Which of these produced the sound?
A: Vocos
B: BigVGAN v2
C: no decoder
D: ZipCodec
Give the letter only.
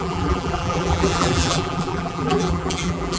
B